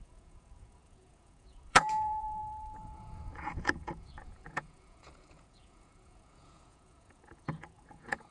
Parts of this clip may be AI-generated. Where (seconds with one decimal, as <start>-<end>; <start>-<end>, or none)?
0.0-8.3